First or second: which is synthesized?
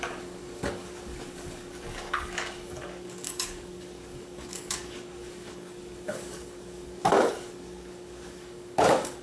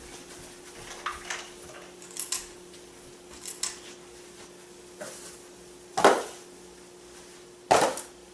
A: first